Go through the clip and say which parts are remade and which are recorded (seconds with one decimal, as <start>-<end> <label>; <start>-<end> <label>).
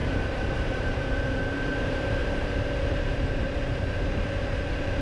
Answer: 0.0-5.0 remade